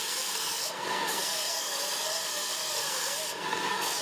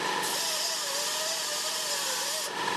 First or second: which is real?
second